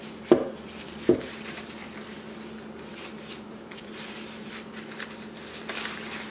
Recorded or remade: recorded